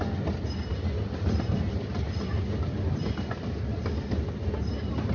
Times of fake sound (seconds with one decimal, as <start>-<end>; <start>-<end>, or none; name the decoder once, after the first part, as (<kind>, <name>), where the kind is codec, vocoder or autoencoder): none